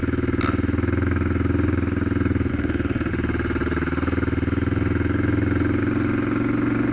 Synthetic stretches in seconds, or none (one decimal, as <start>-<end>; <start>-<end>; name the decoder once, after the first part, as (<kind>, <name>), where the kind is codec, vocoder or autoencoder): 2.5-3.1 (autoencoder, DAC-VAE)